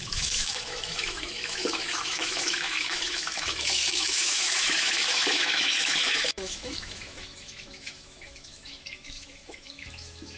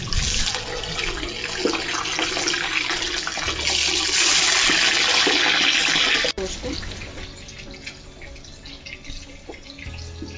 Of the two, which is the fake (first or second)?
first